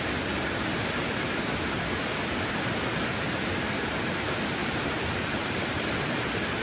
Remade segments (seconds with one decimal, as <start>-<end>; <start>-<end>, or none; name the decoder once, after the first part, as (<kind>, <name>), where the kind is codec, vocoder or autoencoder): 4.6-6.0 (vocoder, BigVGAN v2)